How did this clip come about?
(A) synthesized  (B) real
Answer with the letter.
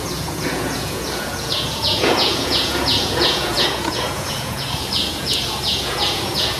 A